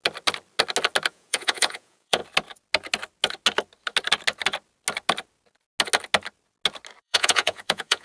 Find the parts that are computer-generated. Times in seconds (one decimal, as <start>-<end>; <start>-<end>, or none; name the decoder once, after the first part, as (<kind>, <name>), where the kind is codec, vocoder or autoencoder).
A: 1.1-2.2 (vocoder, Vocos); 7.0-8.0